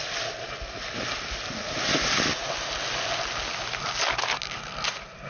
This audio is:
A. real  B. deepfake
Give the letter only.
A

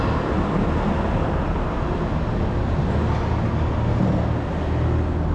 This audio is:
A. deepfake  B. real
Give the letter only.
B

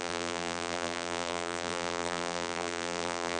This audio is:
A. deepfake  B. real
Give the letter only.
A